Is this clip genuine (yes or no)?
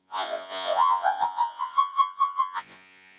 no